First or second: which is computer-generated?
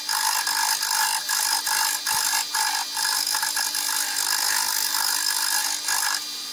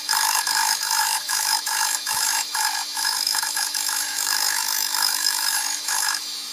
second